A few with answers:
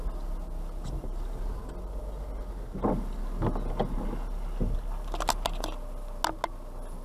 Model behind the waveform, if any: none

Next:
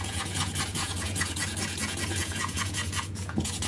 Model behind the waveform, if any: vocoder, Vocos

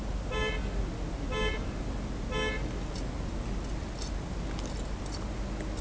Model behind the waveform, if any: none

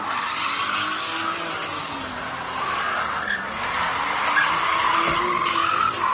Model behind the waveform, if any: none